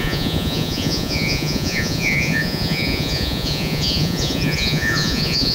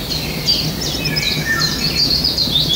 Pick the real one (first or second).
second